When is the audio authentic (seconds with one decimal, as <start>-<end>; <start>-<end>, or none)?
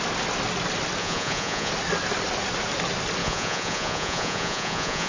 0.0-1.0; 1.7-3.2